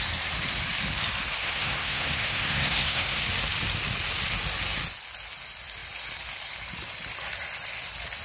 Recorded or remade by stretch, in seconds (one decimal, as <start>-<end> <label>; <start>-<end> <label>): 0.0-1.4 recorded; 1.4-3.2 remade; 3.2-8.2 recorded